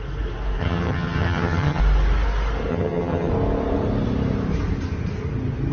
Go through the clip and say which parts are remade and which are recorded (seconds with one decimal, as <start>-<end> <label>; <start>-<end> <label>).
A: 0.0-0.6 recorded; 0.6-1.8 remade; 1.8-2.7 recorded; 2.7-3.3 remade; 3.3-5.7 recorded